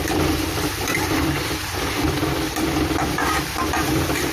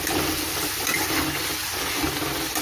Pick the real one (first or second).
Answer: second